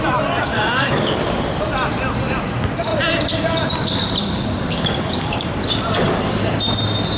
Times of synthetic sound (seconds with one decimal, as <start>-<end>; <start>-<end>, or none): 0.5-1.2; 4.2-5.6